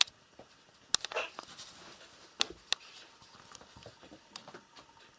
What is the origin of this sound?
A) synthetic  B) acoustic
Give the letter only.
B